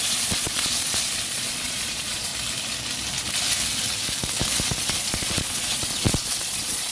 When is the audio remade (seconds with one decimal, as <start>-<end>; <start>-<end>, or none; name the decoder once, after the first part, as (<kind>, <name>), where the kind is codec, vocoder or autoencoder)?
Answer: 0.0-2.3 (vocoder, Vocos); 4.8-6.9